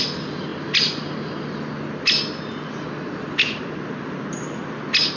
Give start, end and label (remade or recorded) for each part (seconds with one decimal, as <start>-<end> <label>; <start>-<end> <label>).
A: 0.0-5.2 recorded